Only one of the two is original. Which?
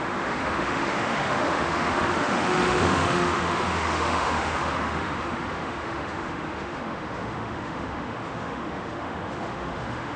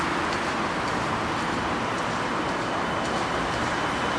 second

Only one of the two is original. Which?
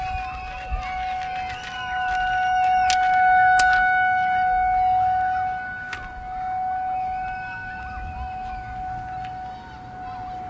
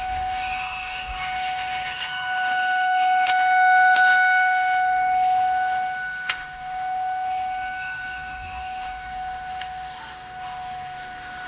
first